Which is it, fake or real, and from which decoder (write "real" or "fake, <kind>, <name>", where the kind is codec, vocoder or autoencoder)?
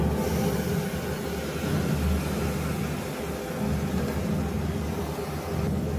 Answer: real